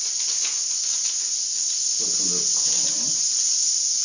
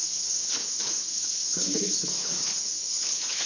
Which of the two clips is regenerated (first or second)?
second